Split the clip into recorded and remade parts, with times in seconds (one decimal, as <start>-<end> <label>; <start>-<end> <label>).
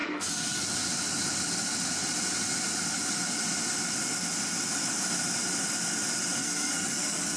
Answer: 0.0-0.7 remade; 0.7-6.4 recorded; 6.4-7.4 remade